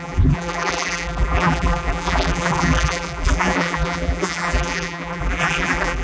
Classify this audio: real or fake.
fake